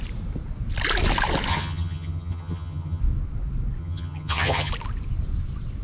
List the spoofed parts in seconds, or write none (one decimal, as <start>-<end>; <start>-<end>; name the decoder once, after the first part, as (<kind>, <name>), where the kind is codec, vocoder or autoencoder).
1.5-3.0 (vocoder, HiFi-GAN); 3.8-4.7